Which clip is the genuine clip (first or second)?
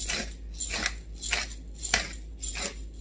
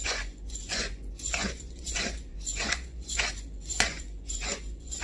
first